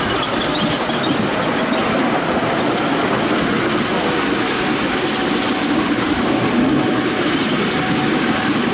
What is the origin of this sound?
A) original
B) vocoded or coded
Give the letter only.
A